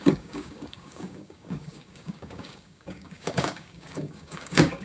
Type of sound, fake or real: fake